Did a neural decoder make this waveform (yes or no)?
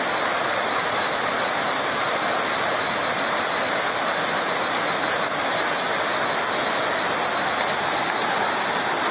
no